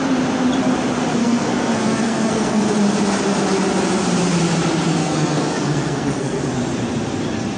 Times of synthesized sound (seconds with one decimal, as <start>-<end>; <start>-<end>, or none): 1.2-2.6; 5.0-6.4